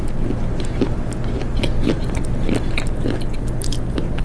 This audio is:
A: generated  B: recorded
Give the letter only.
B